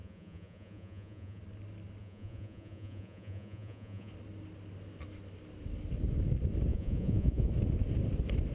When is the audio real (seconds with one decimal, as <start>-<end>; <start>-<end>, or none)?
1.4-2.0; 4.1-6.7; 7.5-8.5